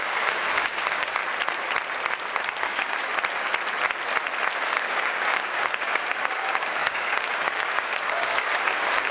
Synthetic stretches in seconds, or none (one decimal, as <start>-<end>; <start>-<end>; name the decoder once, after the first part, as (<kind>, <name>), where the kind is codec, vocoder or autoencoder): 0.0-1.2 (codec, DAC); 2.6-3.1; 4.6-9.1